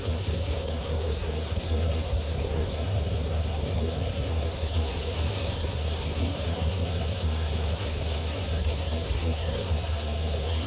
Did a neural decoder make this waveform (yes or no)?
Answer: yes